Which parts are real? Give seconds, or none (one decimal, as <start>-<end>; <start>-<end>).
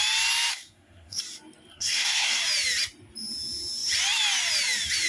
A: 0.0-0.5; 1.2-1.7; 2.4-5.1